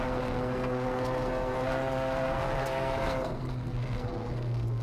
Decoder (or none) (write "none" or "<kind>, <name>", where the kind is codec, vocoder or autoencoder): codec, SNAC